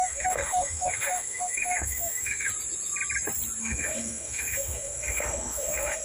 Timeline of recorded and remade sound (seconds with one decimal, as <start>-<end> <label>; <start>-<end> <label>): 0.0-2.5 remade; 2.5-3.6 recorded; 3.6-6.0 remade